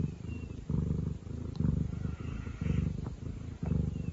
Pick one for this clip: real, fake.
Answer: real